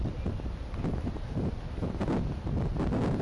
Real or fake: real